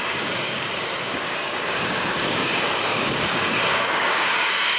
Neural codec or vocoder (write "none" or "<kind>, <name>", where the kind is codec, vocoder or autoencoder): codec, DAC